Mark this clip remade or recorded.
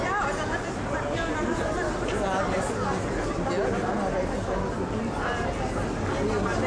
recorded